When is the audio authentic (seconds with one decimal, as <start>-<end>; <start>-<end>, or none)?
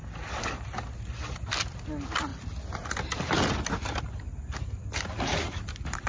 0.0-6.1